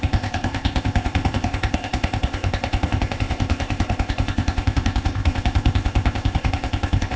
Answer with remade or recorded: remade